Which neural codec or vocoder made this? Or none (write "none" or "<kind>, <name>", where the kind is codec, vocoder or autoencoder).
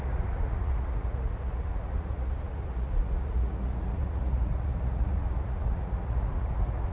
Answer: vocoder, Vocos